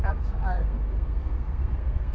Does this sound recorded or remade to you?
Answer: remade